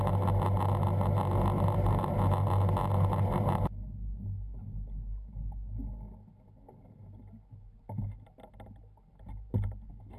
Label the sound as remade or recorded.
recorded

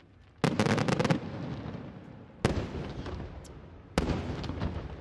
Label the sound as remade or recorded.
recorded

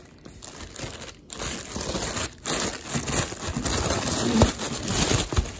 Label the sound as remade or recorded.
recorded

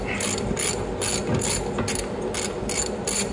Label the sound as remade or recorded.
recorded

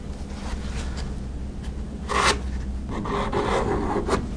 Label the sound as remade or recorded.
recorded